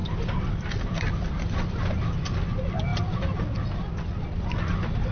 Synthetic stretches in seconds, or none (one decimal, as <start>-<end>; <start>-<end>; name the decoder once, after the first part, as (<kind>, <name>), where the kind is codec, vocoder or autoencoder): none

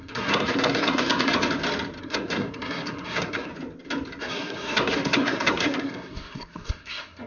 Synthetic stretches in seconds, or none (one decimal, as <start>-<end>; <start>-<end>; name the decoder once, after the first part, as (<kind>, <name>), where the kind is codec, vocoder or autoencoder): 0.0-1.3 (codec, SNAC); 2.0-3.5; 4.2-7.3

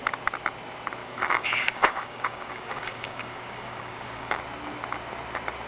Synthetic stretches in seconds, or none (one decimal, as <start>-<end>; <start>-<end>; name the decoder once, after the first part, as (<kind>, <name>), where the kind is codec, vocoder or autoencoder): 1.0-4.4 (codec, DAC)